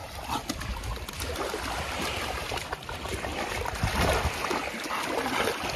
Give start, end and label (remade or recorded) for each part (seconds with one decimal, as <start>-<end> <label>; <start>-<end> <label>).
0.0-5.8 recorded